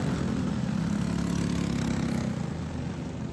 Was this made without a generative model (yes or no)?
yes